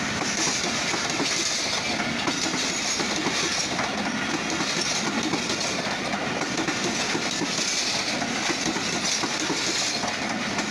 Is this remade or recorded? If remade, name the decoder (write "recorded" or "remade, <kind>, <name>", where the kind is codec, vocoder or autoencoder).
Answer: recorded